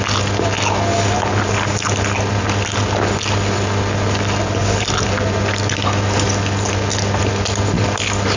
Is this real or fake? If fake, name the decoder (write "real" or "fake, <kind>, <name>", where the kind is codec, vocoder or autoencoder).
real